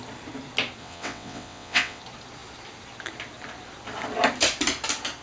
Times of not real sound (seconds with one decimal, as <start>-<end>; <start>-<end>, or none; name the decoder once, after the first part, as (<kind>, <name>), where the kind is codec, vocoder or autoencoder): 0.8-2.0 (vocoder, WaveNeXt)